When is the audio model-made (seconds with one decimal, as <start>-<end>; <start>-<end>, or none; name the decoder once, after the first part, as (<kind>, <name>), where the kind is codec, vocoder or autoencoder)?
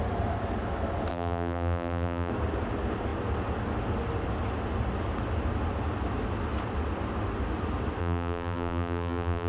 1.1-2.3 (vocoder, BigVGAN v2); 8.0-9.5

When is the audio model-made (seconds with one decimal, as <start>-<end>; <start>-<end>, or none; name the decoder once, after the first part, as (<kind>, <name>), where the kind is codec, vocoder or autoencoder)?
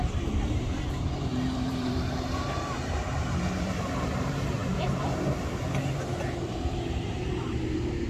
0.0-8.1 (vocoder, BigVGAN v2)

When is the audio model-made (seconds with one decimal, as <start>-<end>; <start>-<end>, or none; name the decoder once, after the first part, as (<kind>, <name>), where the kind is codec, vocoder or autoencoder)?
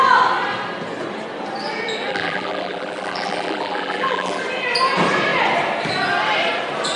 2.1-4.4 (vocoder, BigVGAN v2)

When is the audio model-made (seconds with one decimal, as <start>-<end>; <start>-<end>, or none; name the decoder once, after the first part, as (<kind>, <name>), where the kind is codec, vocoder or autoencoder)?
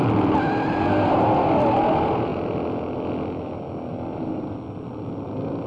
none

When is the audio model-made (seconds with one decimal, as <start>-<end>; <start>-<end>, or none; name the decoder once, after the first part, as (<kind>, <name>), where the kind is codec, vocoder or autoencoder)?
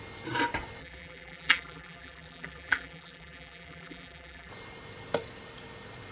0.8-4.5 (vocoder, BigVGAN v2)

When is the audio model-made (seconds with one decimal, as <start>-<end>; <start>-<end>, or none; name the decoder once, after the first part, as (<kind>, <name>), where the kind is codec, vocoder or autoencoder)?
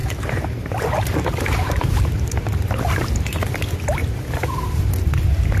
0.0-3.4 (vocoder, BigVGAN v2); 4.0-4.8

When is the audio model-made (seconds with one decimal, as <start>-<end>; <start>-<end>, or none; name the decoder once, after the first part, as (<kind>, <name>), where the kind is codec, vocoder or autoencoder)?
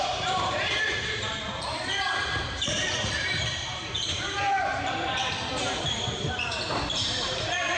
0.0-7.8 (vocoder, BigVGAN v2)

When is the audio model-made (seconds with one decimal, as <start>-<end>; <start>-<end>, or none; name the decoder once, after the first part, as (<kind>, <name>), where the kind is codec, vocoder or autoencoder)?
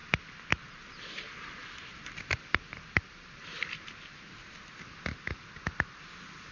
0.0-0.6 (vocoder, BigVGAN v2); 1.6-3.3